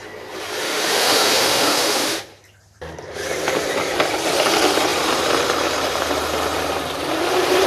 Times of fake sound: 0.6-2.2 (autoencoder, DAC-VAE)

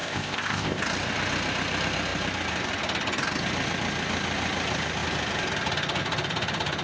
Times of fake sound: 0.0-0.8 (codec, ZipCodec)

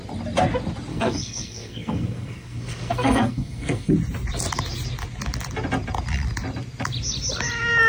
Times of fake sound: 0.9-3.9 (codec, SNAC)